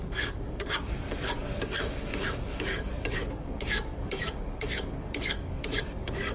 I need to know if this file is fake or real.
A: fake